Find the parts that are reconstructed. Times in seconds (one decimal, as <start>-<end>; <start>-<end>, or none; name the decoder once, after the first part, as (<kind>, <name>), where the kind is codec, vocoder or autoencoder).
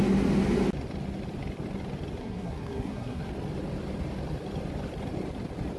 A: 2.2-3.2 (codec, SNAC)